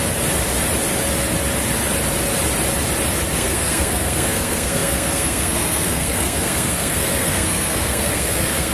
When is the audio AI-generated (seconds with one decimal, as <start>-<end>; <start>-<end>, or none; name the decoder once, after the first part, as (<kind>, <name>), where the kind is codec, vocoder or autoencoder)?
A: 3.3-8.7 (codec, SNAC)